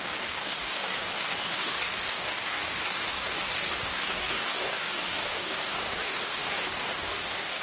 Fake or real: fake